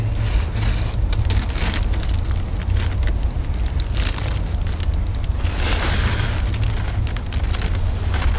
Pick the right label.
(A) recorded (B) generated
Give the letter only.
A